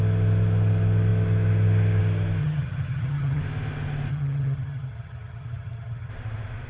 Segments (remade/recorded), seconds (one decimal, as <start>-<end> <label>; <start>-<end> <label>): 0.0-2.4 recorded; 2.4-3.4 remade; 3.4-4.1 recorded; 4.1-6.1 remade; 6.1-6.7 recorded